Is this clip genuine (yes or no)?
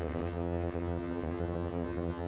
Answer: no